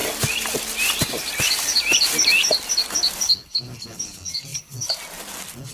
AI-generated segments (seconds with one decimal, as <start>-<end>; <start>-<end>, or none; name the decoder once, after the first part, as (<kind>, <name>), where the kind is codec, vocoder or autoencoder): 0.0-4.5 (vocoder, BigVGAN v2)